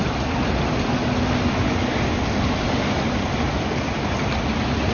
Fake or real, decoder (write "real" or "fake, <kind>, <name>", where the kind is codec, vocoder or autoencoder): real